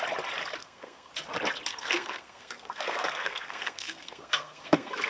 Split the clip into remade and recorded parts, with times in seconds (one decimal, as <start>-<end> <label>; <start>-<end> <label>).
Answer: 0.0-0.6 recorded; 0.6-1.1 remade; 1.1-1.7 recorded; 1.7-5.1 remade